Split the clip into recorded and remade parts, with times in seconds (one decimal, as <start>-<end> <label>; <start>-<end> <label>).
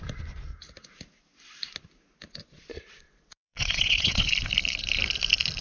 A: 0.0-2.4 recorded; 2.4-4.3 remade; 4.3-5.6 recorded